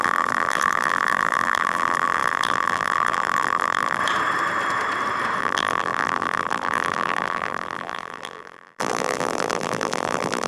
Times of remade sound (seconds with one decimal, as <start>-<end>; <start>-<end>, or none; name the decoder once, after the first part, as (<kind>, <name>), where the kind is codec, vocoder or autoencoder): 0.0-4.0 (vocoder, BigVGAN v2); 5.4-10.5